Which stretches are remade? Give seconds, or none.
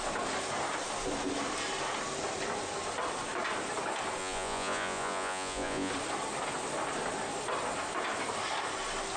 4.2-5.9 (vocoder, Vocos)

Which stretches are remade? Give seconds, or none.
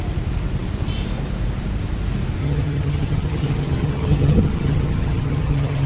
2.4-5.9 (vocoder, HiFi-GAN)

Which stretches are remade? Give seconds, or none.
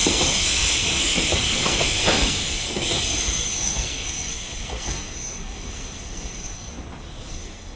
0.0-6.7 (codec, SNAC); 7.3-7.8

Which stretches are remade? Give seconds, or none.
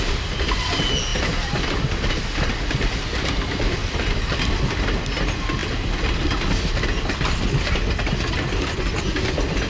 3.8-4.4 (vocoder, BigVGAN v2)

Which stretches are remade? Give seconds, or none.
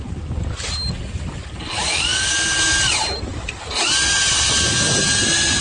none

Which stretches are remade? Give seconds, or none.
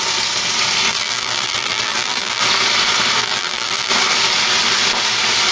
0.9-2.4 (vocoder, BigVGAN v2); 3.2-3.9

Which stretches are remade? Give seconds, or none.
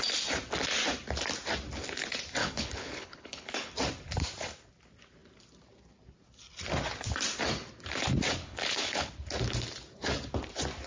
2.4-3.7 (codec, HILCodec); 8.4-9.1